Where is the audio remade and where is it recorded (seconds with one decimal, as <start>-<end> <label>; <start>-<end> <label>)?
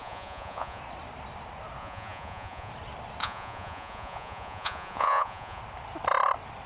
0.0-0.8 remade; 0.8-1.8 recorded; 1.8-2.7 remade; 2.7-3.2 recorded; 3.2-5.6 remade; 5.6-6.7 recorded